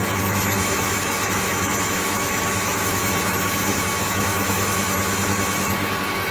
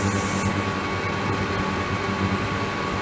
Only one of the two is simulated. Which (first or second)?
first